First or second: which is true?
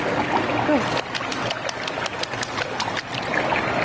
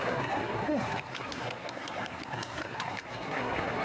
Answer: first